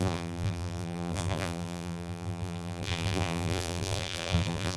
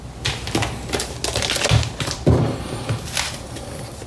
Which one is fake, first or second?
first